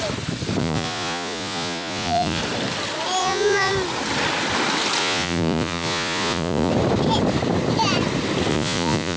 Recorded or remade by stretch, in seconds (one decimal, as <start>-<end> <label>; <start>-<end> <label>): 0.0-0.6 recorded; 0.6-2.4 remade; 2.4-3.2 recorded; 3.2-3.7 remade; 3.7-5.0 recorded; 5.0-6.7 remade; 6.7-8.5 recorded; 8.5-9.2 remade